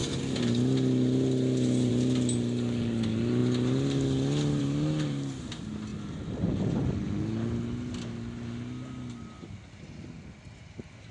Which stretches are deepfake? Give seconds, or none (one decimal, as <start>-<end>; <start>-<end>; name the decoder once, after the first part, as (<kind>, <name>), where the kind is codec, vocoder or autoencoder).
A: none